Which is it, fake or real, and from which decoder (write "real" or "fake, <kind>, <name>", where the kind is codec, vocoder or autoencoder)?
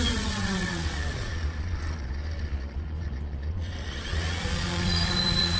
fake, vocoder, Vocos